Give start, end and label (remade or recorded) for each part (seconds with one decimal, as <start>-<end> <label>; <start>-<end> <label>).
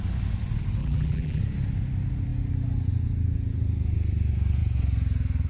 0.0-0.8 recorded; 0.8-1.4 remade; 1.4-5.5 recorded